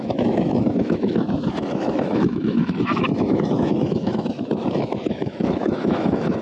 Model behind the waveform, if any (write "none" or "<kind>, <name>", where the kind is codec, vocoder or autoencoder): autoencoder, DAC-VAE